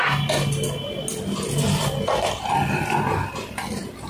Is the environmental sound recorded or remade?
recorded